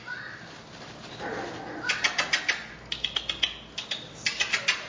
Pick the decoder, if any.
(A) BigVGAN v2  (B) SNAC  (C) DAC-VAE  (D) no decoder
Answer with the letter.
D